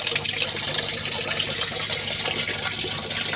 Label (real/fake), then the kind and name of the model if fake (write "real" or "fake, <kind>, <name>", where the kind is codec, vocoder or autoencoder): real